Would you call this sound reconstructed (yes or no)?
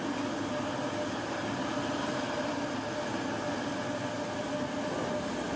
no